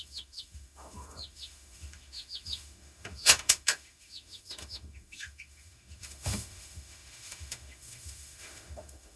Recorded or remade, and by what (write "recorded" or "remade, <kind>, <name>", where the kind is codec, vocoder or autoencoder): remade, autoencoder, DAC-VAE